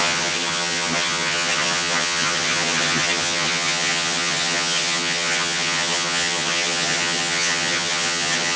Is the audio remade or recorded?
remade